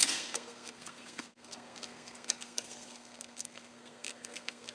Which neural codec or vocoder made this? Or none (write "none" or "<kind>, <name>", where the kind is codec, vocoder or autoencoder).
codec, SNAC